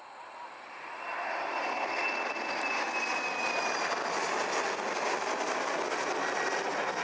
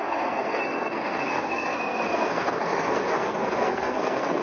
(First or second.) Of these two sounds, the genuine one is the first